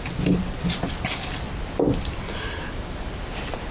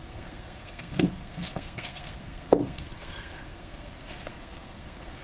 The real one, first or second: first